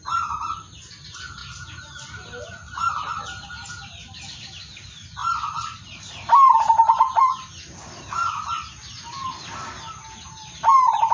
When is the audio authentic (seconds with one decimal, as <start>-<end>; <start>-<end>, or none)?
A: 0.0-11.1